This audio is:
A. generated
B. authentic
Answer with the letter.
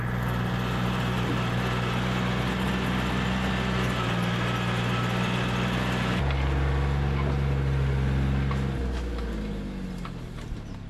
B